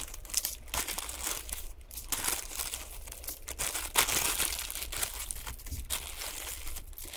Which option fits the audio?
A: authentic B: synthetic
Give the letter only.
A